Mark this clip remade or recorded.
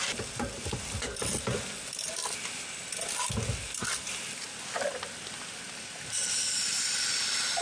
recorded